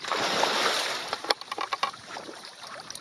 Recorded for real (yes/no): no